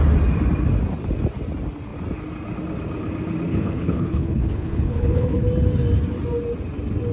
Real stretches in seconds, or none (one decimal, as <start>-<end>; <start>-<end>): 0.0-3.5; 5.4-7.1